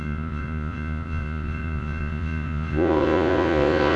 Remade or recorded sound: remade